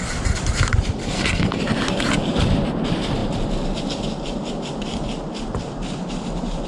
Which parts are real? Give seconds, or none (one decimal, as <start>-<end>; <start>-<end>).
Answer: 0.0-1.0; 1.6-6.7